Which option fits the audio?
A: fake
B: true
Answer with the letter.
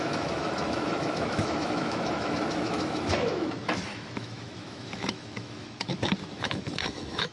A